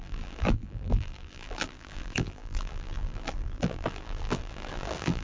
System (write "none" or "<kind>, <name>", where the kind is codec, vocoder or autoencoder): vocoder, BigVGAN v2